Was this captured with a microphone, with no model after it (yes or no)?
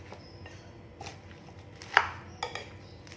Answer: yes